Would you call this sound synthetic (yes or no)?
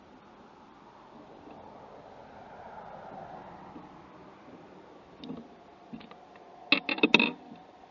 no